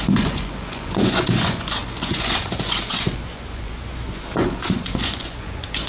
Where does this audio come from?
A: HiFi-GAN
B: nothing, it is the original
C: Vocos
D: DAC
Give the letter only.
C